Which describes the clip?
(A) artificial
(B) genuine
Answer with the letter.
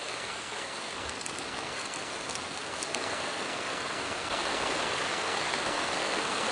A